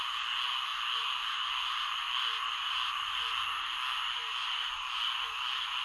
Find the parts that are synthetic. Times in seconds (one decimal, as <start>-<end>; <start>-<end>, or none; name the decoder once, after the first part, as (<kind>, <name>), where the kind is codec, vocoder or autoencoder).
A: none